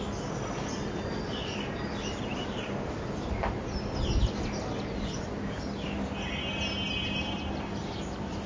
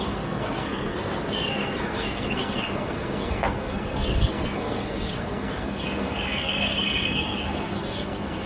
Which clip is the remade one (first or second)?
second